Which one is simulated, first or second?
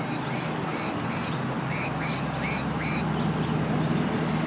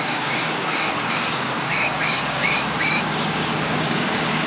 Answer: second